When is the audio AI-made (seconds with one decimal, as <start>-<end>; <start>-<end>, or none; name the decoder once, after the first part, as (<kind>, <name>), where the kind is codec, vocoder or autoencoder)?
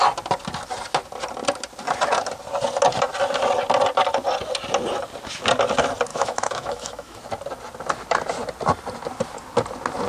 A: 6.1-7.2 (autoencoder, DAC-VAE)